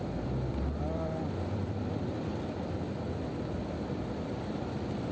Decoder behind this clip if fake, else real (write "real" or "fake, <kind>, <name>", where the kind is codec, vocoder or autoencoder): fake, vocoder, BigVGAN v2